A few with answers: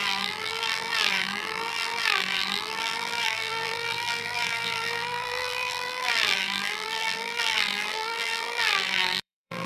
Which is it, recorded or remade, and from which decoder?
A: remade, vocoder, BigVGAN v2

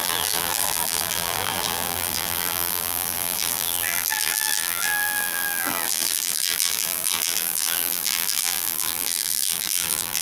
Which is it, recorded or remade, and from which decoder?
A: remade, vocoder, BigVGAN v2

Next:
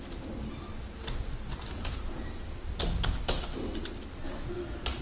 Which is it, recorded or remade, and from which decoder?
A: recorded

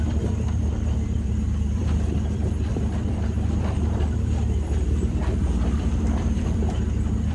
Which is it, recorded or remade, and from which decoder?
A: remade, vocoder, BigVGAN v2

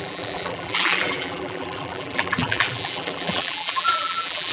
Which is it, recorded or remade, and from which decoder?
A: remade, vocoder, BigVGAN v2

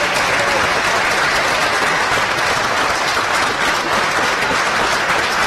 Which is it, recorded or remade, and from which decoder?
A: recorded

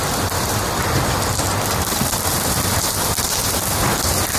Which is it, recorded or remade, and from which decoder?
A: recorded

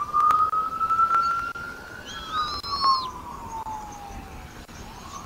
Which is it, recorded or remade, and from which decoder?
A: recorded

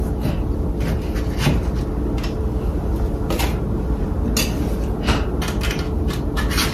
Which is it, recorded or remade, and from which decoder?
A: recorded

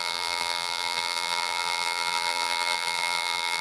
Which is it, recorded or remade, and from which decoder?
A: remade, vocoder, BigVGAN v2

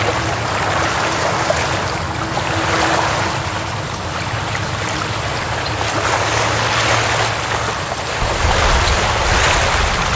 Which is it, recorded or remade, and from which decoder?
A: recorded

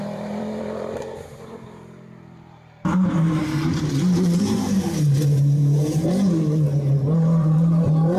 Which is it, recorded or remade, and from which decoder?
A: remade, vocoder, BigVGAN v2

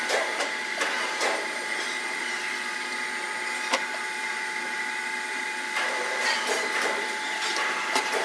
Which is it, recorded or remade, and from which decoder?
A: remade, vocoder, BigVGAN v2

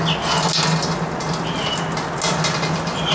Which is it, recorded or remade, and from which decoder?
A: recorded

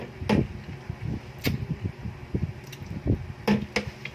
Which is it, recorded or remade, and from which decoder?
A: recorded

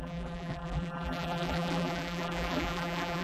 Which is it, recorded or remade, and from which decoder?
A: remade, vocoder, BigVGAN v2